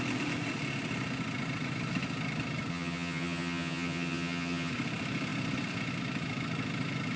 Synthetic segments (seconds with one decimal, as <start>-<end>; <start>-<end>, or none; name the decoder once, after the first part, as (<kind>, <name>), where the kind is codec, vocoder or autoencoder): 2.7-4.7 (vocoder, HiFi-GAN)